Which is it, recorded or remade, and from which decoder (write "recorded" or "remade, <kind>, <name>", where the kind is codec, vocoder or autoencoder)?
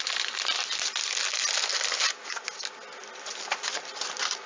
recorded